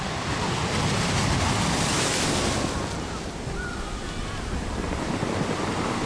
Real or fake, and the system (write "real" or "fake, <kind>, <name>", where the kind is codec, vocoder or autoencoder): real